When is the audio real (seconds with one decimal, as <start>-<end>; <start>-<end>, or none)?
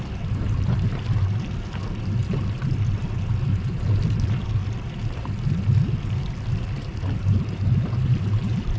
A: 0.0-8.8